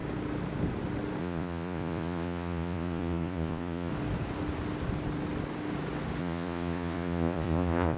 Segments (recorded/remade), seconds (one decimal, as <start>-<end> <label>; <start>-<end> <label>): 0.0-1.2 recorded; 1.2-3.9 remade; 3.9-6.2 recorded; 6.2-8.0 remade